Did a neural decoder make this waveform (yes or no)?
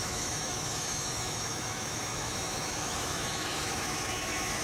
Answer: yes